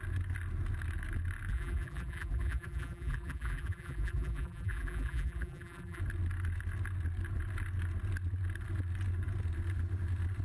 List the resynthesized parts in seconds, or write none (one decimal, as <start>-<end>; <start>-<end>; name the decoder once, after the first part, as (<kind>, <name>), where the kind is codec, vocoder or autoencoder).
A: 1.5-6.0 (vocoder, BigVGAN v2)